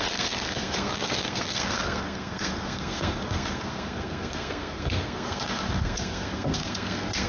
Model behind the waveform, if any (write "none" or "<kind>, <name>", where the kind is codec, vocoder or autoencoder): codec, SNAC